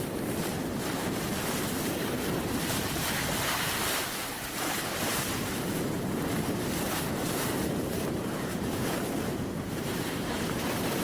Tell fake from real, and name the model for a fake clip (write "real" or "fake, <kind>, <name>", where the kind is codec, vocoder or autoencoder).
fake, vocoder, BigVGAN v2